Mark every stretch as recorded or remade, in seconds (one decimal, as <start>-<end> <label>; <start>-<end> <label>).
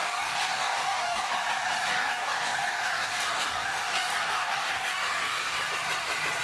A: 0.0-1.3 remade; 1.3-1.9 recorded; 1.9-5.7 remade; 5.7-6.4 recorded